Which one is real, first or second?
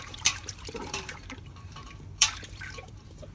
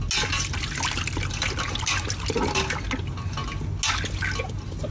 second